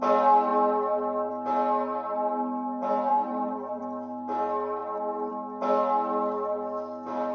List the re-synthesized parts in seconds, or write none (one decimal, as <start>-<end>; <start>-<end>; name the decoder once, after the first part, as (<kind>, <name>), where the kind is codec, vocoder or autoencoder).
3.1-3.8 (vocoder, BigVGAN v2)